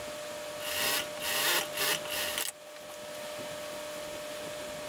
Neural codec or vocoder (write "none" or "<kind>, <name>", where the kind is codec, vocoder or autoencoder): none